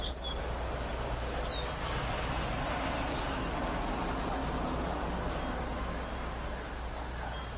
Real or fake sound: real